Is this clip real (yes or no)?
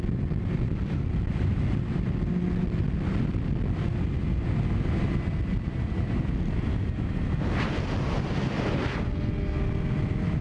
yes